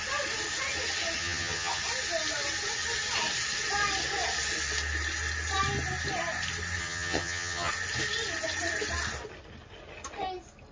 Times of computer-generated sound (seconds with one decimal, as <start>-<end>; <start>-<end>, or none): 1.2-1.8; 6.8-7.7